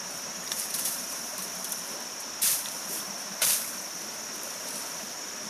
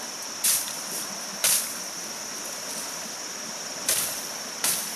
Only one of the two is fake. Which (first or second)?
first